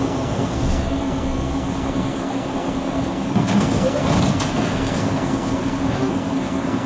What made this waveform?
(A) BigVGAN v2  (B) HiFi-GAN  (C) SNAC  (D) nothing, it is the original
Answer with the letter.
C